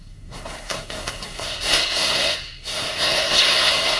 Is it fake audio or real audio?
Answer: fake